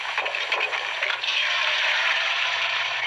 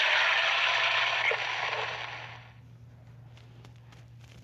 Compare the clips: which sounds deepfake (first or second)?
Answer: first